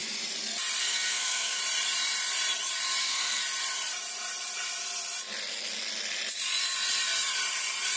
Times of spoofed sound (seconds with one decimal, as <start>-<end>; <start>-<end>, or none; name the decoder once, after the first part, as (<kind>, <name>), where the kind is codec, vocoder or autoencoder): 0.8-1.6 (codec, SNAC); 3.0-3.4